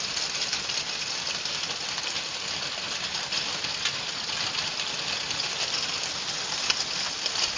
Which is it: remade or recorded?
recorded